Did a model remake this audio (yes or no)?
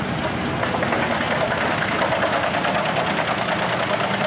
no